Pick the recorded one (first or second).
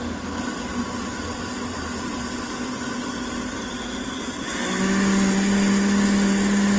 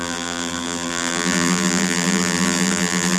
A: first